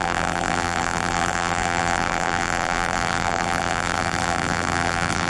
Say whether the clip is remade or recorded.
remade